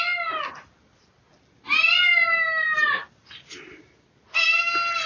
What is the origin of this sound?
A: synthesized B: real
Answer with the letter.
B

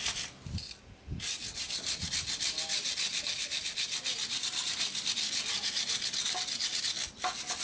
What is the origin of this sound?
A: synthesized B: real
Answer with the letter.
B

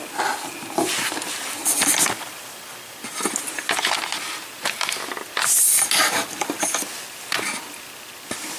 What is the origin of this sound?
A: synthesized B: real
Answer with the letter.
B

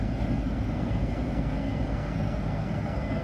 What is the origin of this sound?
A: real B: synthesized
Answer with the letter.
B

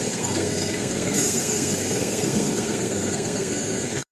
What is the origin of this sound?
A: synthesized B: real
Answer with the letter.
A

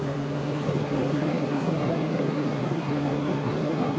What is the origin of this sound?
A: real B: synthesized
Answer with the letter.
B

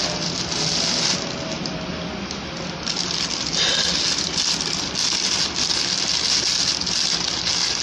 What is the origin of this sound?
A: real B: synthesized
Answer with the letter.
A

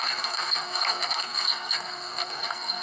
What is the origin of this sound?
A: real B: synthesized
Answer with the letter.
B